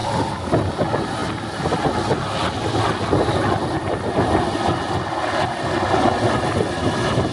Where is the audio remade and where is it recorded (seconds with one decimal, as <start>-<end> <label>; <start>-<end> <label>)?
0.0-0.5 remade; 0.5-7.3 recorded